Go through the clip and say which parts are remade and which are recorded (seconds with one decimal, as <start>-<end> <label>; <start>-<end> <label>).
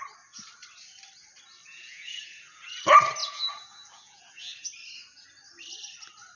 0.0-1.6 recorded; 1.6-2.8 remade; 2.8-3.2 recorded; 3.2-4.6 remade; 4.6-6.4 recorded